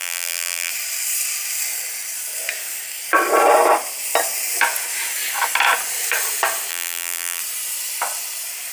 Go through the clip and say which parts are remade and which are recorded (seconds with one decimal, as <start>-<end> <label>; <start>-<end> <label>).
0.0-0.7 remade; 0.7-6.7 recorded; 6.7-7.4 remade; 7.4-8.7 recorded